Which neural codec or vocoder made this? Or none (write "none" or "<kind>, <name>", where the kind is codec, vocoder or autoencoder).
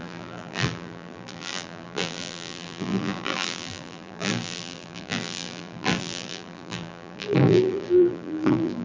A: vocoder, BigVGAN v2